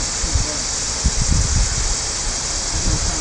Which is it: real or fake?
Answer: real